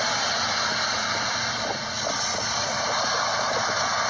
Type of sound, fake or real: real